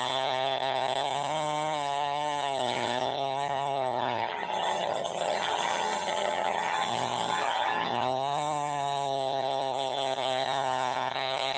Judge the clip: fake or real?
fake